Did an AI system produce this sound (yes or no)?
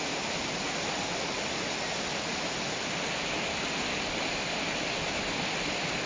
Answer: no